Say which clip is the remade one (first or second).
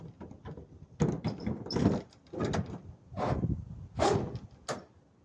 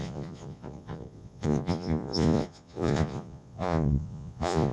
second